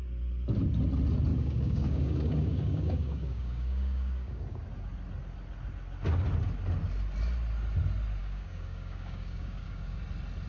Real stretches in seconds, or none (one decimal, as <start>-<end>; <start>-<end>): 0.0-1.3; 4.6-8.2; 10.0-10.5